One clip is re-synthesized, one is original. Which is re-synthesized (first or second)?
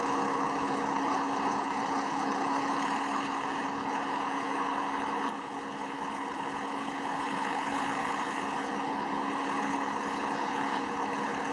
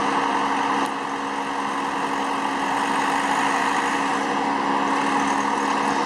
first